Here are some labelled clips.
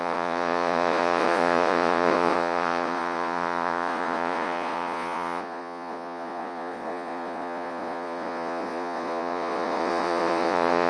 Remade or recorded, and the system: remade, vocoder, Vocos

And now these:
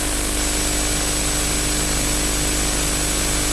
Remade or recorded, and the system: recorded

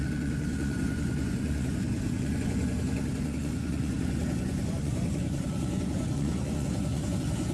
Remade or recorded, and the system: remade, vocoder, Vocos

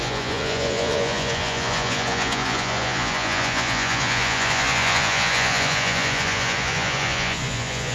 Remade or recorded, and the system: remade, vocoder, Vocos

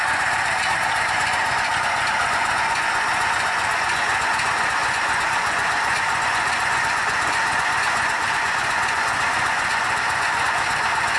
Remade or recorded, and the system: remade, vocoder, Vocos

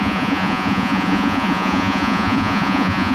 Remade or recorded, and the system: remade, vocoder, Vocos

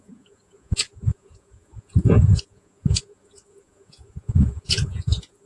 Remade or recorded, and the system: remade, vocoder, Vocos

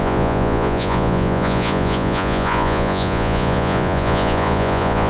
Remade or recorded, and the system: remade, vocoder, Vocos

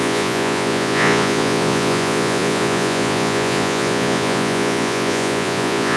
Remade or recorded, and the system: remade, vocoder, Vocos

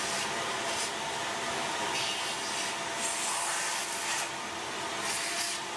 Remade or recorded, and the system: recorded